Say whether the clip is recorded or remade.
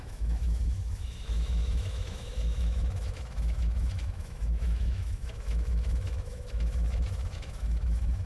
remade